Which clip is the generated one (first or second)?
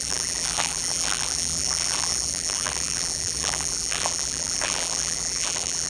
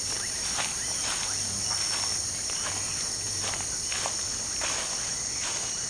first